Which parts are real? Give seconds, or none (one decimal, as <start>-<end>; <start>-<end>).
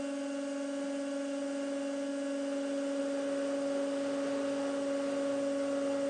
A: 0.0-6.1